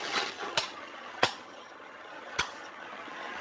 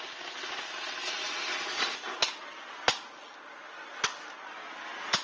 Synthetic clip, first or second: first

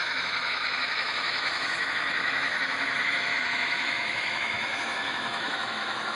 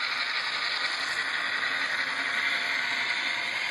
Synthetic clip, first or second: first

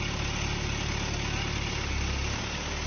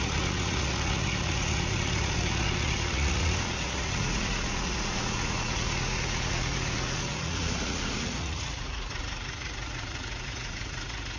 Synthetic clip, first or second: second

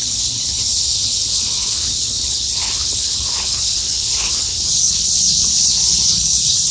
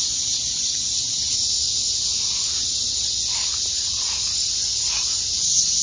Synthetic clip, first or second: first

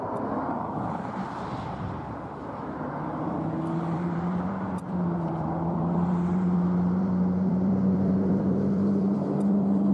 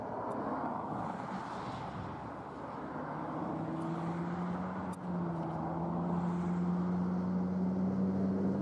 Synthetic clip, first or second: first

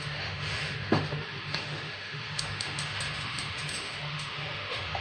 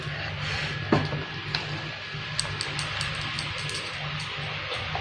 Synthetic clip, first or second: first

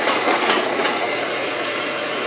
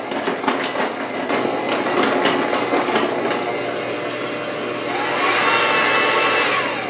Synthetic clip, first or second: first